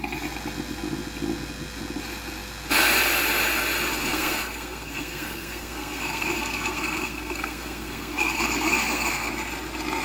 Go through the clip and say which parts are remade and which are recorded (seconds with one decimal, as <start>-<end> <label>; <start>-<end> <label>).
0.0-4.1 recorded; 4.1-9.3 remade; 9.3-10.0 recorded